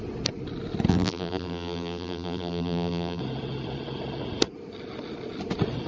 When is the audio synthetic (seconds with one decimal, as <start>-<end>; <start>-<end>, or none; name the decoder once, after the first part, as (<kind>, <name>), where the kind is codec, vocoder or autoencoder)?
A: 0.9-3.2 (vocoder, BigVGAN v2)